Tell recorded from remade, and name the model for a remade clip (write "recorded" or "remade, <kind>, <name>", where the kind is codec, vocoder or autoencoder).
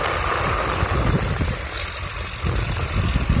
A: recorded